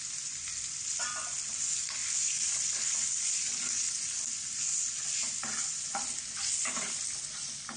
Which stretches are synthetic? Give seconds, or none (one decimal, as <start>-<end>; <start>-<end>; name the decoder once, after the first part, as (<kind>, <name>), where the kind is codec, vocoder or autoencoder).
2.0-3.4 (vocoder, BigVGAN v2)